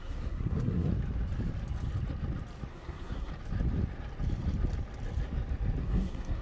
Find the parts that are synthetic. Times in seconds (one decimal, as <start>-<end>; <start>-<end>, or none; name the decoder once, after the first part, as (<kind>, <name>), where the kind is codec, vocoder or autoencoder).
0.0-0.9 (codec, SNAC); 2.7-3.3; 5.8-6.4